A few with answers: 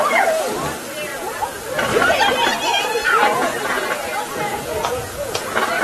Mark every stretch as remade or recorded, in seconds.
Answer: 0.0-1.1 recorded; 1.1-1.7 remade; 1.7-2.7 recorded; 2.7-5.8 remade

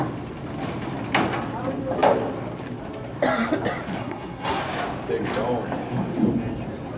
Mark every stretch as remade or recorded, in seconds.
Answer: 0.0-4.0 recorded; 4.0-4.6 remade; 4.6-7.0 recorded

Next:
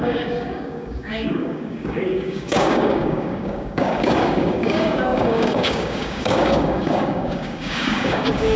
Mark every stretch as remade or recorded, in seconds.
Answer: 0.0-8.6 remade

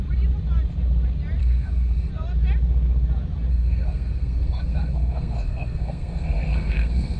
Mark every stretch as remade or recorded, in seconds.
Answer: 0.0-1.4 recorded; 1.4-2.1 remade; 2.1-3.5 recorded; 3.5-7.2 remade

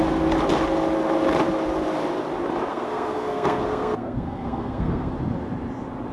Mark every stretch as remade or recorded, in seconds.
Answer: 0.0-2.7 recorded; 2.7-5.1 remade; 5.1-6.1 recorded

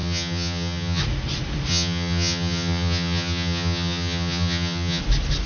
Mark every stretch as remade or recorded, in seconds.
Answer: 0.0-1.0 remade; 1.0-1.7 recorded; 1.7-5.0 remade; 5.0-5.5 recorded

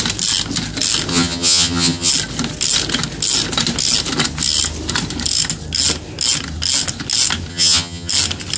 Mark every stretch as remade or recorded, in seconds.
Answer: 0.0-1.1 recorded; 1.1-2.1 remade; 2.1-7.5 recorded; 7.5-8.1 remade; 8.1-8.6 recorded

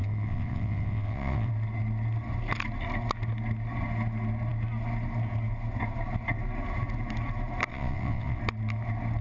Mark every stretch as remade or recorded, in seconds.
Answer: 0.0-1.5 remade; 1.5-7.7 recorded; 7.7-8.4 remade; 8.4-9.2 recorded